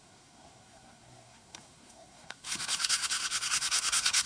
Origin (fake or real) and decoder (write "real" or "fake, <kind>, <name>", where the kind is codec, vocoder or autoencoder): fake, codec, SNAC